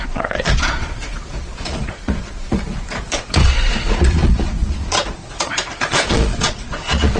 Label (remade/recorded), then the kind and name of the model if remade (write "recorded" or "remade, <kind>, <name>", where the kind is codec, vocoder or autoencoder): remade, vocoder, Vocos